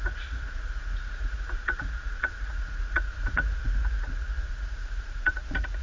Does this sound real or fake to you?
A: fake